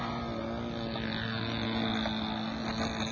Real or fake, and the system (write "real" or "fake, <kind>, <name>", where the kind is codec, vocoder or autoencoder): real